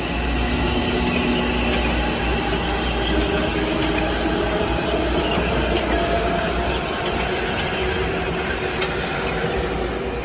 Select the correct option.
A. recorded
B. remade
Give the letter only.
A